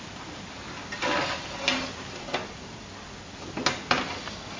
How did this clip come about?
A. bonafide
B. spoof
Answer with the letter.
A